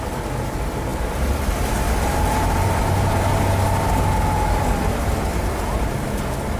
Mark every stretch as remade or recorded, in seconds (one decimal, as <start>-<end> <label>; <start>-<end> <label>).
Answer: 0.0-0.9 recorded; 0.9-2.8 remade; 2.8-6.6 recorded